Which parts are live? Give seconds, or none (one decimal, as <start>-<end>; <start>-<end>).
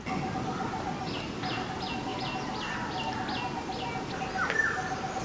0.0-5.2